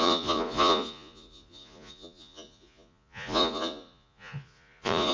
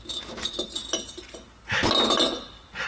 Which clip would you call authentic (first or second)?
second